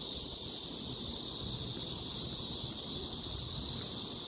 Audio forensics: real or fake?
real